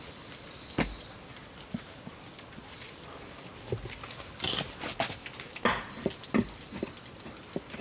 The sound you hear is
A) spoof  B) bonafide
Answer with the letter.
B